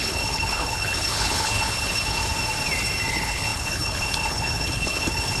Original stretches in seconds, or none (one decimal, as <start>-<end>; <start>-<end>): 2.2-3.1